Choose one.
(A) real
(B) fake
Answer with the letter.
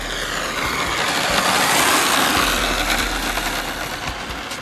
A